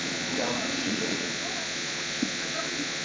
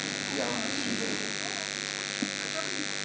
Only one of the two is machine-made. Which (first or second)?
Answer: first